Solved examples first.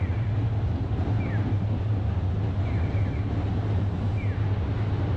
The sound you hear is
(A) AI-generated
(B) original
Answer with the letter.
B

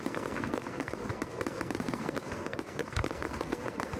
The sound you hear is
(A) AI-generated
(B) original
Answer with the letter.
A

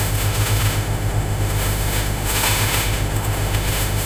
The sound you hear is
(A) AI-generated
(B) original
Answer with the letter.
A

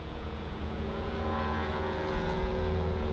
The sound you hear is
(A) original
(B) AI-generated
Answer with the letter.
B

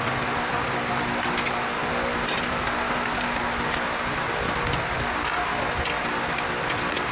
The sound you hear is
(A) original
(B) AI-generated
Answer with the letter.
A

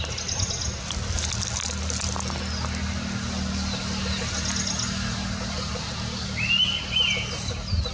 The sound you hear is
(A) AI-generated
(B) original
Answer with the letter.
B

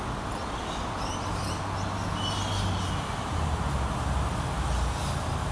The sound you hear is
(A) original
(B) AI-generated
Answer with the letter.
A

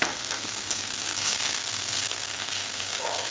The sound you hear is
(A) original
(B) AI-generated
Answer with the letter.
B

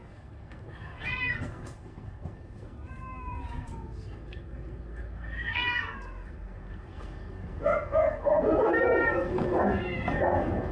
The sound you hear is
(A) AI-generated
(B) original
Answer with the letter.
A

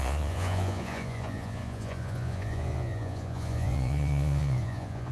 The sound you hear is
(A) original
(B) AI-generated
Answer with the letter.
B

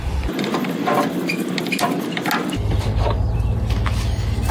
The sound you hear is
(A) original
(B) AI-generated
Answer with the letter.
A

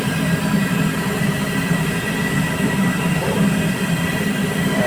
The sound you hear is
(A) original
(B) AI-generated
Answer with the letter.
B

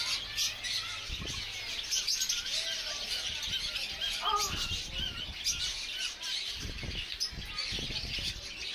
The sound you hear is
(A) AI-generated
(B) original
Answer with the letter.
B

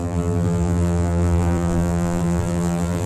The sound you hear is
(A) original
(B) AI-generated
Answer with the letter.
B